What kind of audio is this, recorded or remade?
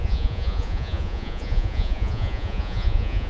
remade